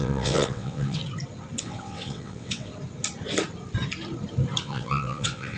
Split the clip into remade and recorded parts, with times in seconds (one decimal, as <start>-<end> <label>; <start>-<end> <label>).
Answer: 0.0-1.0 remade; 1.0-1.6 recorded; 1.6-2.7 remade; 2.7-4.6 recorded; 4.6-5.6 remade